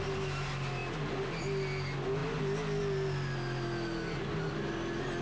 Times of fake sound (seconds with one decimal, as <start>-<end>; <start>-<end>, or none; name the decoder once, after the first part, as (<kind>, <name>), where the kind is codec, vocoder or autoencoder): none